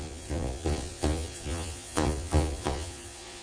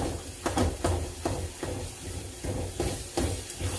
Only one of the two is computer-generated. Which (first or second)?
first